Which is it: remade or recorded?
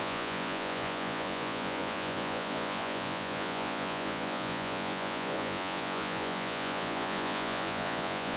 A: remade